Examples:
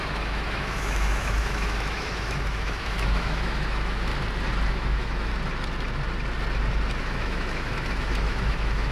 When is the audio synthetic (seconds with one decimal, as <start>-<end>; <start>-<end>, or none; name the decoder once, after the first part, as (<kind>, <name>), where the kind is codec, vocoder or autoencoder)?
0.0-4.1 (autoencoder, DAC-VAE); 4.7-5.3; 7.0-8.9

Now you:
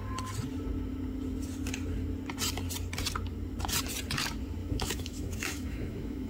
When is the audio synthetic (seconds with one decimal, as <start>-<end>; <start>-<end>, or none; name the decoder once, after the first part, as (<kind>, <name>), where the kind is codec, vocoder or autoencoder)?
4.6-6.3 (autoencoder, DAC-VAE)

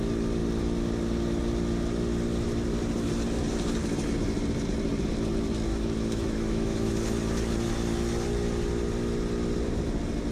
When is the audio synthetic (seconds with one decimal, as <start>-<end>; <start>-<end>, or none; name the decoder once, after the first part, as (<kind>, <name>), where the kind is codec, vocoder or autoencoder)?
5.7-6.9 (autoencoder, DAC-VAE)

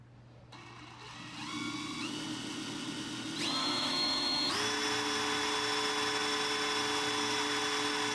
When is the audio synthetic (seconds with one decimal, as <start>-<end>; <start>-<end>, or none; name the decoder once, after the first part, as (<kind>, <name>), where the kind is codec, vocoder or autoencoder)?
3.6-4.5 (autoencoder, DAC-VAE)

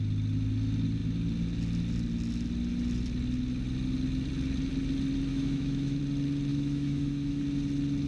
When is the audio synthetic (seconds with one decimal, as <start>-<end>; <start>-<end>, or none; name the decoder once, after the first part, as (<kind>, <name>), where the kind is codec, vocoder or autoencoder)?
5.3-6.0 (autoencoder, DAC-VAE); 6.5-7.4

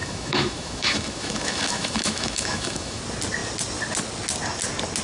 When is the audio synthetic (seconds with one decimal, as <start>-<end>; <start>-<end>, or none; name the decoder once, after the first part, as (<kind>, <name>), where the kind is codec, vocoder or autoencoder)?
0.0-3.0 (autoencoder, DAC-VAE)